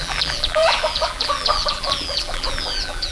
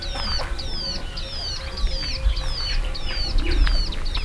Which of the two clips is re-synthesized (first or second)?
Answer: first